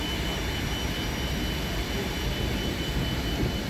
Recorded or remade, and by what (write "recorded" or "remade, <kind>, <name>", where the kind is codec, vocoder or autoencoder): recorded